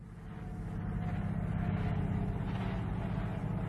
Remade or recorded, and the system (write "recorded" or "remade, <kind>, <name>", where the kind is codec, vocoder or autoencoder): recorded